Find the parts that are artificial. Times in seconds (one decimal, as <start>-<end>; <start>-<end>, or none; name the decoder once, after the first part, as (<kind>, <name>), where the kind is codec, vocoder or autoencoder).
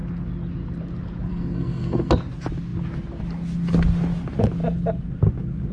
1.3-2.1 (codec, SNAC)